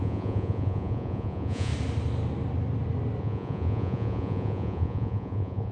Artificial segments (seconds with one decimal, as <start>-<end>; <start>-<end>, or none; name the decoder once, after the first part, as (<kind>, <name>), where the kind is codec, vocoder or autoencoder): 0.0-1.7 (vocoder, Vocos); 3.2-5.7